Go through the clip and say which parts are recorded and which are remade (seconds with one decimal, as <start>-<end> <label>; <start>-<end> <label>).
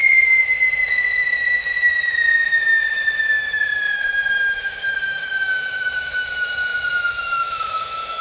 0.0-8.2 remade